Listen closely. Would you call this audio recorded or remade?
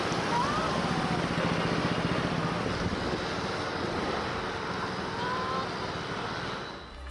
recorded